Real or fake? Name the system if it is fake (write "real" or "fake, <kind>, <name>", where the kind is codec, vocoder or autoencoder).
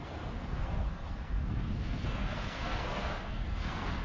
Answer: fake, codec, SNAC